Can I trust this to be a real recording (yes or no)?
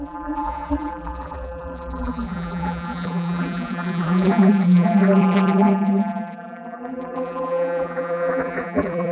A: no